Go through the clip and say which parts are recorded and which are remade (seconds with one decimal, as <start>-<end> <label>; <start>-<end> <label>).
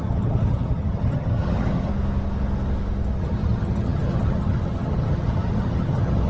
0.0-1.9 remade; 1.9-3.2 recorded; 3.2-6.3 remade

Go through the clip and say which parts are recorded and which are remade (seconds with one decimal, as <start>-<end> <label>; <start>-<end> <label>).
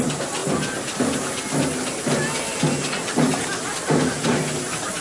0.0-5.0 recorded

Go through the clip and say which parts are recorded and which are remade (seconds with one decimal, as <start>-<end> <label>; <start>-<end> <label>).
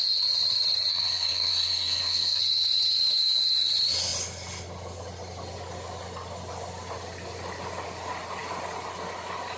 0.0-0.9 recorded; 0.9-2.4 remade; 2.4-9.6 recorded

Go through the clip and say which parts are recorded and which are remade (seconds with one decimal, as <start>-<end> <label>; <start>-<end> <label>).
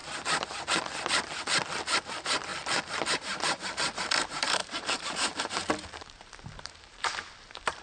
0.0-2.1 recorded; 2.1-2.5 remade; 2.5-3.1 recorded; 3.1-7.8 remade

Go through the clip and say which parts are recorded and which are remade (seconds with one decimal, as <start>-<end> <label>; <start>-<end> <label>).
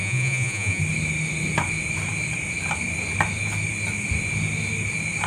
0.0-0.8 remade; 0.8-5.3 recorded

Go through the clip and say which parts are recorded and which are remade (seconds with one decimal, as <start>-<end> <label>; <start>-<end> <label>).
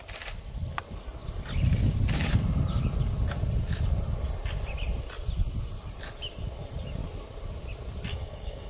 0.0-8.1 recorded; 8.1-8.7 remade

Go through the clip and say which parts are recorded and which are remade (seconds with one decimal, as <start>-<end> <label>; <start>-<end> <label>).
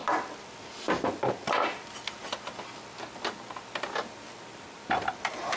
0.0-5.6 recorded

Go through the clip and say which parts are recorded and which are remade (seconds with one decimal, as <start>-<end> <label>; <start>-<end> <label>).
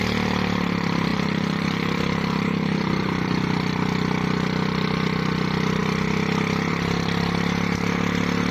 0.0-1.1 recorded; 1.1-3.4 remade; 3.4-8.5 recorded